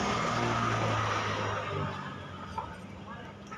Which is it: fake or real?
real